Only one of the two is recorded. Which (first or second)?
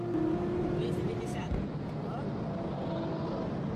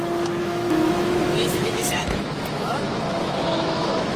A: first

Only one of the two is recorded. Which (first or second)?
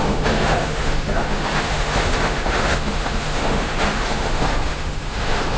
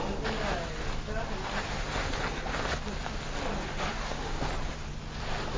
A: second